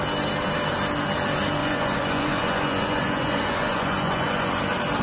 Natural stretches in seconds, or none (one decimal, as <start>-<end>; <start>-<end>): 0.0-1.6; 4.6-5.0